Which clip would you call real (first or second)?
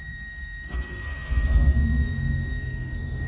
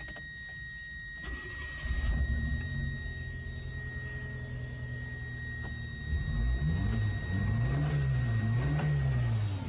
second